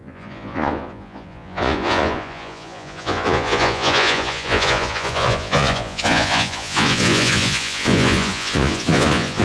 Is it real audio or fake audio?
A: fake